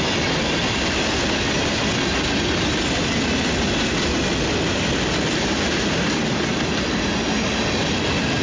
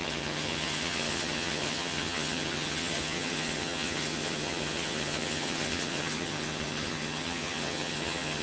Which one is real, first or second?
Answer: first